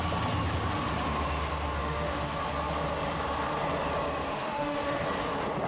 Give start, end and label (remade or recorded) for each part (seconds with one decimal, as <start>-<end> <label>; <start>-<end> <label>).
0.0-1.8 recorded; 1.8-2.4 remade; 2.4-4.3 recorded; 4.3-5.0 remade; 5.0-5.7 recorded

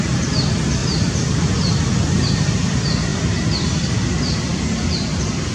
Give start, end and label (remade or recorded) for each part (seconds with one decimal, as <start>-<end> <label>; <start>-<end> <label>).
0.0-0.8 recorded; 0.8-2.5 remade; 2.5-3.1 recorded; 3.1-3.9 remade; 3.9-4.5 recorded; 4.5-5.5 remade

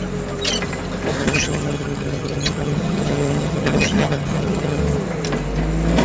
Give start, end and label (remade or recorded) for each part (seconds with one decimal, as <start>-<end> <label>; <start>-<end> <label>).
0.0-1.2 recorded; 1.2-4.8 remade; 4.8-6.0 recorded

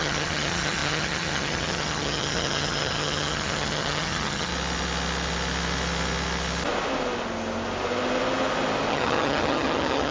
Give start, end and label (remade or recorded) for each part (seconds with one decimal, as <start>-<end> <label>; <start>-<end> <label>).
0.0-4.5 remade; 4.5-8.9 recorded; 8.9-10.1 remade

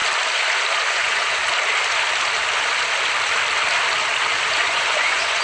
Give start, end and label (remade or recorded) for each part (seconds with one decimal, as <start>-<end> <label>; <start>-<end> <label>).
0.0-0.9 recorded; 0.9-1.4 remade; 1.4-4.6 recorded; 4.6-5.4 remade